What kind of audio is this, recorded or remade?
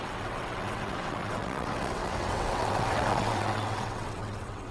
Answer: remade